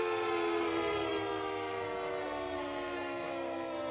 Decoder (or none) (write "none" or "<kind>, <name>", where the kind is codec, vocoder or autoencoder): codec, SNAC